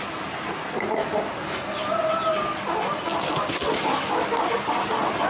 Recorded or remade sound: recorded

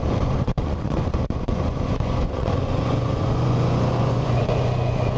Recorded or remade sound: remade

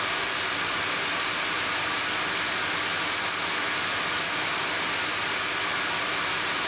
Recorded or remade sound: recorded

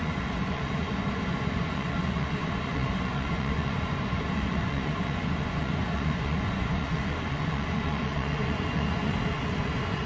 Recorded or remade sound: remade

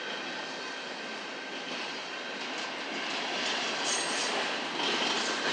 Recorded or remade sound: recorded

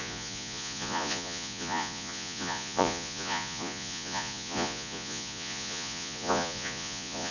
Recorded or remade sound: remade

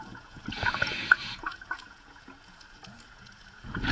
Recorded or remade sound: remade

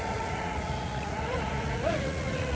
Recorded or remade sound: remade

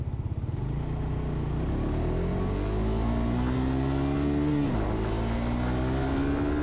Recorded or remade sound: recorded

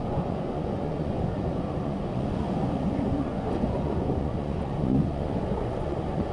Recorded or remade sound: remade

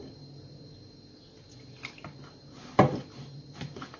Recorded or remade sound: recorded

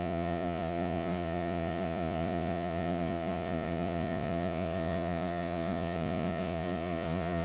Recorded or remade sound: remade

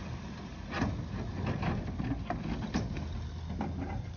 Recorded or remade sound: recorded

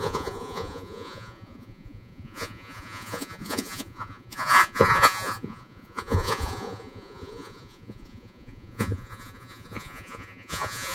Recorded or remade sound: remade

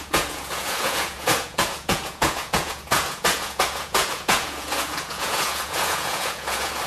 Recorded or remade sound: remade